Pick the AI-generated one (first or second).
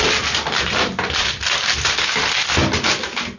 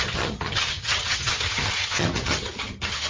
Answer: second